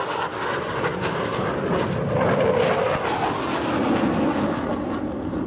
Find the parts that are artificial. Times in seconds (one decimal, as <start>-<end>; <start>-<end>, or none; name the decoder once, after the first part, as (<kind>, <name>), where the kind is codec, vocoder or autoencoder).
none